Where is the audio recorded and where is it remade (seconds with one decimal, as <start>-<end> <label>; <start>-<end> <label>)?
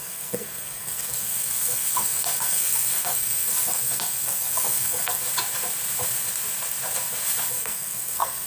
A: 0.0-5.2 remade; 5.2-7.5 recorded; 7.5-8.5 remade